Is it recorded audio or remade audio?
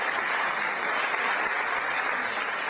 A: recorded